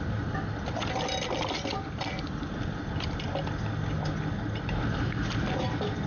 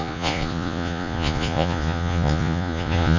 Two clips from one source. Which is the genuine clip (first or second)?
first